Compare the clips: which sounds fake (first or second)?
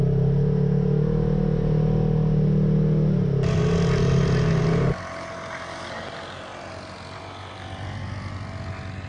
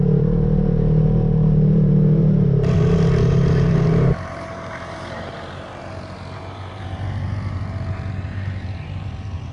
second